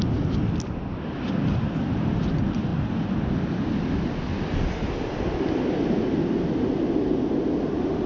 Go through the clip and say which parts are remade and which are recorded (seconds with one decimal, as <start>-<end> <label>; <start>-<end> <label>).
0.0-8.1 recorded